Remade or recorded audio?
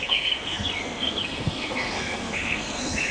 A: remade